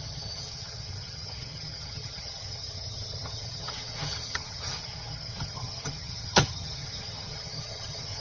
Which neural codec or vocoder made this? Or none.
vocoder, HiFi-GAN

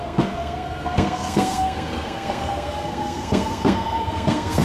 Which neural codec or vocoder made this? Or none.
codec, SNAC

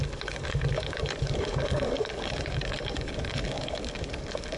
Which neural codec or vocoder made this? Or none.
codec, DAC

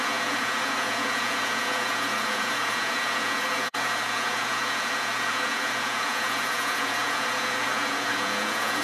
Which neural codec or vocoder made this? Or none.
vocoder, Vocos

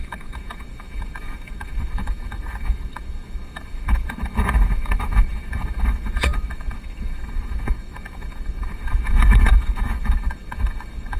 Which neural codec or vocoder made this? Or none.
autoencoder, DAC-VAE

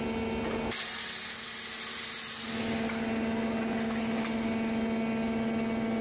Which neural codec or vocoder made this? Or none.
none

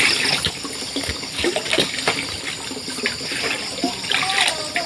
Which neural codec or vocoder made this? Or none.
none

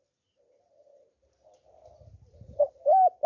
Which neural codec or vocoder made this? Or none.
none